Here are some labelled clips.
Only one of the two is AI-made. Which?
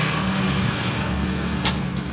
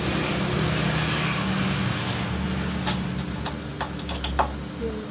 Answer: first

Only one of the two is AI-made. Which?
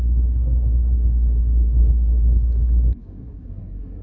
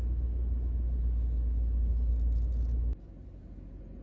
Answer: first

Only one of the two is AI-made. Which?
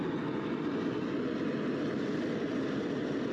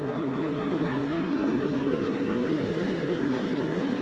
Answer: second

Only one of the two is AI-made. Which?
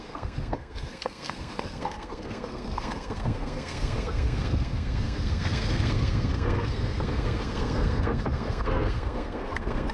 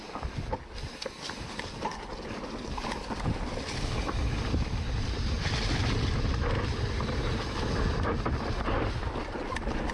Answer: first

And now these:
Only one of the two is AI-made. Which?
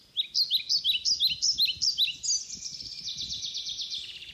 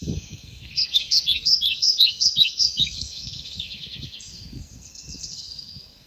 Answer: second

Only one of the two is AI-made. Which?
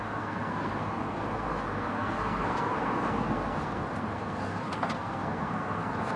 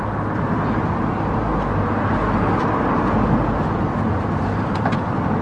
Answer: first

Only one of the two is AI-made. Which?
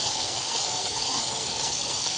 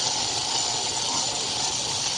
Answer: first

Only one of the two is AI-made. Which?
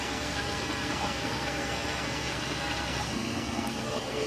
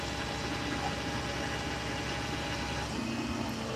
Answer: first